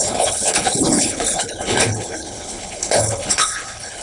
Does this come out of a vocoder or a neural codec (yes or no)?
yes